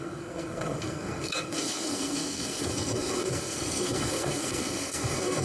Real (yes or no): no